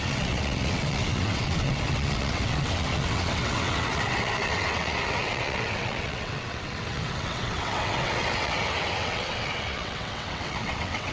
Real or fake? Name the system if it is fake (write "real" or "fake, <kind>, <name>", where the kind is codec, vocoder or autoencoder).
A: fake, vocoder, WaveNeXt